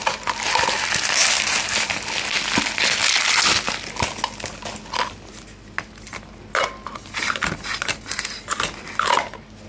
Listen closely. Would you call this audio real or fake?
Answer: real